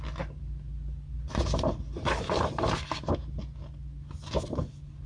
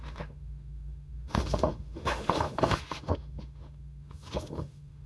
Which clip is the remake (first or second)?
second